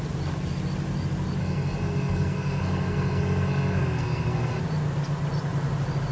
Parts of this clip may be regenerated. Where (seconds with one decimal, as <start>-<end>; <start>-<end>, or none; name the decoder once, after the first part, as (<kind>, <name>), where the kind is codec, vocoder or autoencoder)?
1.4-4.6 (codec, SNAC)